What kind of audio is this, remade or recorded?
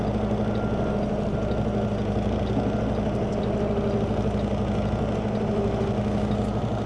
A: recorded